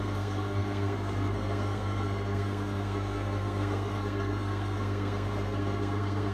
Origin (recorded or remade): remade